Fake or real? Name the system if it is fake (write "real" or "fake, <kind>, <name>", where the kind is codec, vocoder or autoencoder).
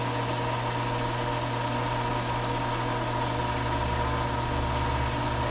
real